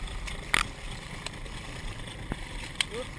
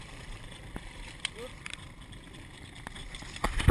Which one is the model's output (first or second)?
second